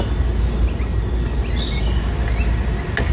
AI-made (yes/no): no